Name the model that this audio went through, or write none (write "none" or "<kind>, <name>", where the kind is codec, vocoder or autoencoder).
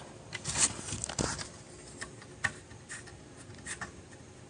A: none